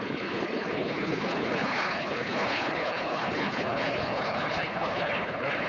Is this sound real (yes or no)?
no